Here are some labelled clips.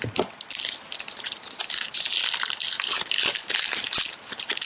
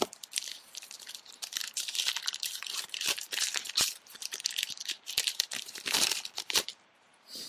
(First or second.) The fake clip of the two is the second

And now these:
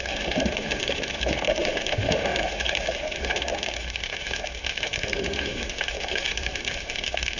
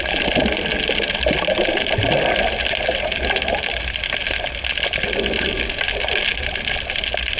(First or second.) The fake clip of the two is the first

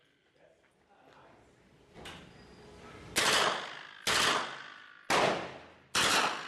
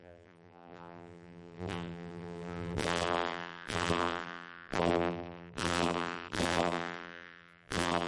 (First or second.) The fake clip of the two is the second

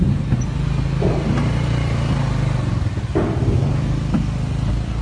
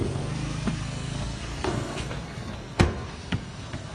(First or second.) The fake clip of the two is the second